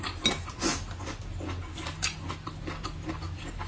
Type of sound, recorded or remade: recorded